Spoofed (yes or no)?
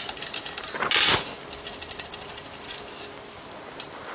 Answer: no